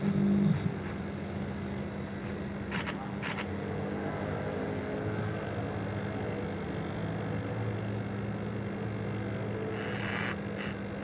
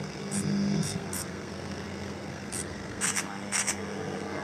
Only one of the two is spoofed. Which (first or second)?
second